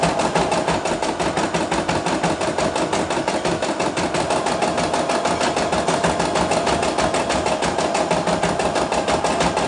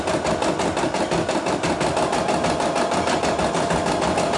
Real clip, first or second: first